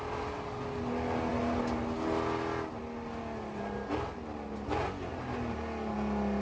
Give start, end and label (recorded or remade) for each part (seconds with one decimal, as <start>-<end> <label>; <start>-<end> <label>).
0.0-6.4 recorded